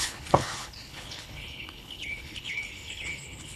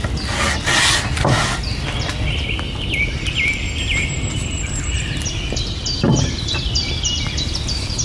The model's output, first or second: first